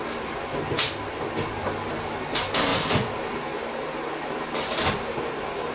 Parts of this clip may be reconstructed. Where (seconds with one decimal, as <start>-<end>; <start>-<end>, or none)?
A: 0.0-5.7